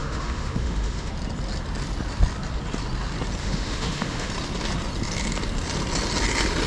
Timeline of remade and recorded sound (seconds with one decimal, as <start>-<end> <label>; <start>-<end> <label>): 0.0-1.1 remade; 1.1-3.4 recorded; 3.4-4.3 remade; 4.3-6.7 recorded